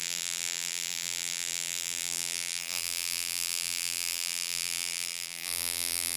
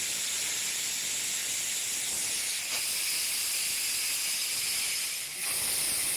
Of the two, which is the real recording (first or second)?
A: second